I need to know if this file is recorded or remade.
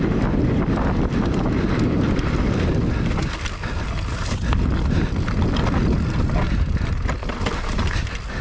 recorded